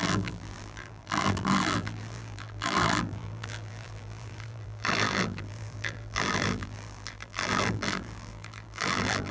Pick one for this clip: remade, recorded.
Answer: remade